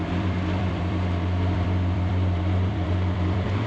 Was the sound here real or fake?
fake